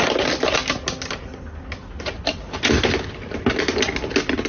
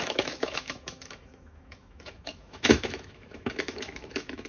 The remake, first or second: second